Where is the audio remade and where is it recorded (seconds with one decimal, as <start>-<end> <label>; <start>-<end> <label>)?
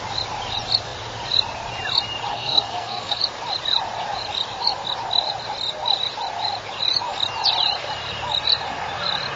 0.0-2.3 recorded; 2.3-3.2 remade; 3.2-9.4 recorded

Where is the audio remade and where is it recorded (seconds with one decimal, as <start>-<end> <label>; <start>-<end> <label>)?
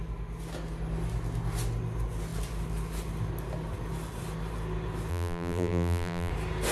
0.0-5.1 recorded; 5.1-6.3 remade; 6.3-6.7 recorded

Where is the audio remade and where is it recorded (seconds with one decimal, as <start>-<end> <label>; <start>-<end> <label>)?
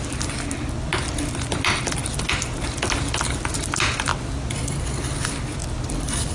0.0-4.1 recorded; 4.1-4.8 remade; 4.8-5.6 recorded; 5.6-6.3 remade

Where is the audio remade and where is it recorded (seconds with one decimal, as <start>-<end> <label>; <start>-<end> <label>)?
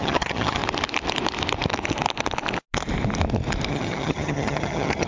0.0-0.6 remade; 0.6-3.7 recorded; 3.7-5.1 remade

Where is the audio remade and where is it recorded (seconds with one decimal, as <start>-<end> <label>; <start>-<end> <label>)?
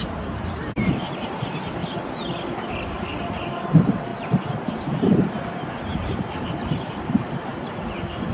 0.0-1.8 remade; 1.8-3.1 recorded; 3.1-4.1 remade; 4.1-4.8 recorded; 4.8-7.5 remade; 7.5-8.3 recorded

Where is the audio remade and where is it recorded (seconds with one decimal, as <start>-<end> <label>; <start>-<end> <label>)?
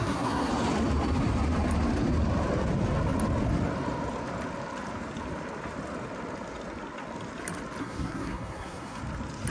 0.0-0.5 remade; 0.5-7.8 recorded; 7.8-9.0 remade; 9.0-9.5 recorded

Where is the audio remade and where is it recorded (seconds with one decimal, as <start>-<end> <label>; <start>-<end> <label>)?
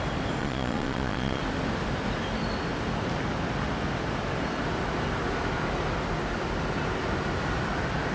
0.0-0.4 recorded; 0.4-1.4 remade; 1.4-8.1 recorded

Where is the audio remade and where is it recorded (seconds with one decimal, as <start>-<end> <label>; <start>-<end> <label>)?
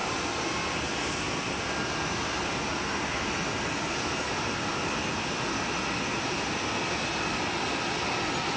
0.0-8.6 recorded